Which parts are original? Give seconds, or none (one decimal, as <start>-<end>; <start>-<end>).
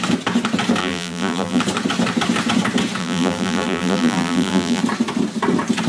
0.0-0.8; 1.6-3.0; 4.8-5.9